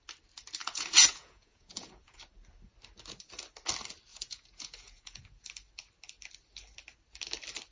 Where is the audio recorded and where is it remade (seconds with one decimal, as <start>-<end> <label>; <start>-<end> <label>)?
0.0-0.6 recorded; 0.6-2.2 remade; 2.2-4.1 recorded; 4.1-5.2 remade; 5.2-7.7 recorded